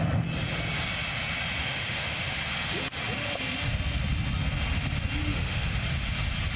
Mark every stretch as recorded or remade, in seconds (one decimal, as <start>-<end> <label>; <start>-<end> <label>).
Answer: 0.0-1.6 recorded; 1.6-2.3 remade; 2.3-5.3 recorded; 5.3-5.8 remade; 5.8-6.6 recorded